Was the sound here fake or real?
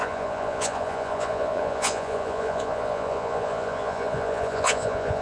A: fake